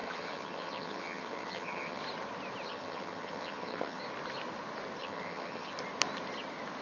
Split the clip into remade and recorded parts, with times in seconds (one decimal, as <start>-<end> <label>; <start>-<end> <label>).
0.0-2.0 remade; 2.0-2.7 recorded; 2.7-4.0 remade; 4.0-5.0 recorded; 5.0-5.7 remade; 5.7-6.8 recorded